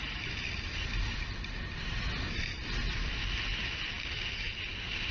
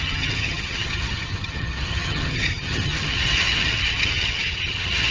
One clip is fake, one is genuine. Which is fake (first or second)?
second